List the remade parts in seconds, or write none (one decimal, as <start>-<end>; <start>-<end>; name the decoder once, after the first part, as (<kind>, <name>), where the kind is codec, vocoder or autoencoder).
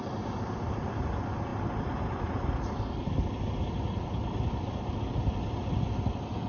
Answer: none